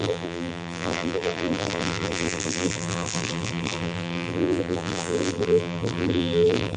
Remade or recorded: remade